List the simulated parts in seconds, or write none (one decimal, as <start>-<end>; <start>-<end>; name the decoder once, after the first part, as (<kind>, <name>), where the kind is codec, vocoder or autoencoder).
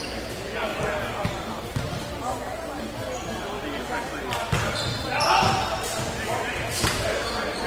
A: none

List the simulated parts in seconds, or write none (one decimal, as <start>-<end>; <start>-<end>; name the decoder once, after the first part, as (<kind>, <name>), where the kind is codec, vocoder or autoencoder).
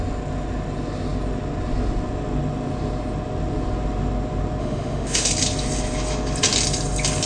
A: 4.6-5.3 (autoencoder, DAC-VAE)